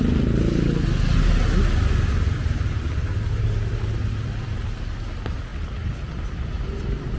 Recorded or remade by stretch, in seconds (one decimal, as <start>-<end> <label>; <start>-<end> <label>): 0.0-7.2 recorded